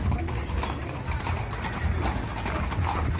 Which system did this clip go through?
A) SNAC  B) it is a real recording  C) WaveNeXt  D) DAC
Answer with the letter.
B